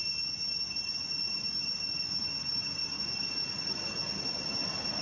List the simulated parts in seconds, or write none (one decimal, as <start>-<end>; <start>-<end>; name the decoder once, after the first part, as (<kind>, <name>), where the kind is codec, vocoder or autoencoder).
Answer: none